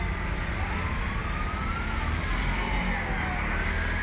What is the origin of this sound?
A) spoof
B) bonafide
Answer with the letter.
B